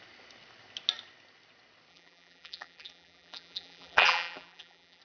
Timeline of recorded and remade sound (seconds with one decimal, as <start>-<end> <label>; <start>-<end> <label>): 0.0-1.9 recorded; 1.9-5.0 remade